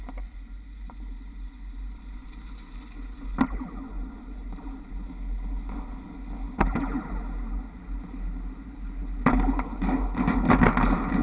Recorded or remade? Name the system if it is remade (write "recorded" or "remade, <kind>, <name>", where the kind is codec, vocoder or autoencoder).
recorded